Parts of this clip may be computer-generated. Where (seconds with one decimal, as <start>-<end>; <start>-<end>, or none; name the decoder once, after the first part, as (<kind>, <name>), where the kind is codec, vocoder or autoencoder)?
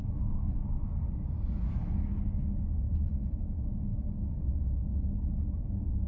none